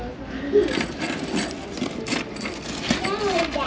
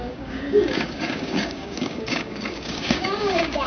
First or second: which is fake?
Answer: second